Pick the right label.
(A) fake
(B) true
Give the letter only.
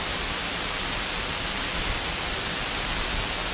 A